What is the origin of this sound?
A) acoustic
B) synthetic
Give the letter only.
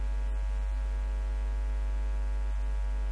A